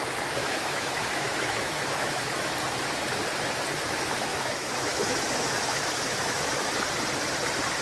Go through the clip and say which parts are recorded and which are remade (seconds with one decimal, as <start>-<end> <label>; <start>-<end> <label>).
0.0-0.4 recorded; 0.4-2.5 remade; 2.5-4.3 recorded; 4.3-6.7 remade; 6.7-7.8 recorded